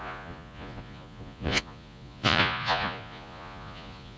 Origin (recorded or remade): remade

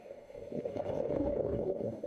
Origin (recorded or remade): remade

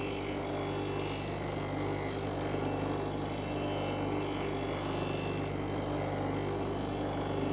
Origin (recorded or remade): recorded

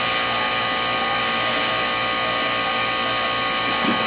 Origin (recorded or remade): recorded